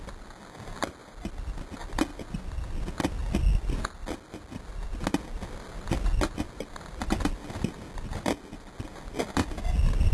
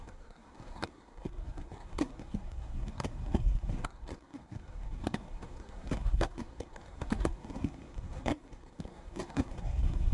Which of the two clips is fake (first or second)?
second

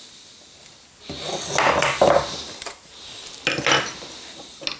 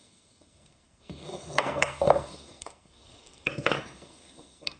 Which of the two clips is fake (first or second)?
second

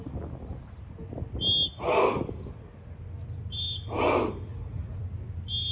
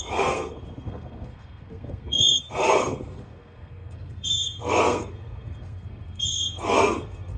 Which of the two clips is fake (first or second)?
second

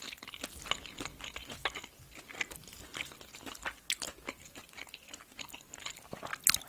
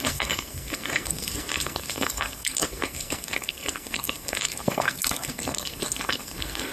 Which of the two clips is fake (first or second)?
second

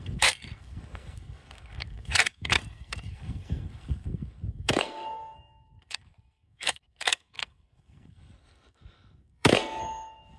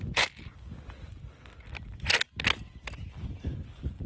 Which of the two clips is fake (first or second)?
first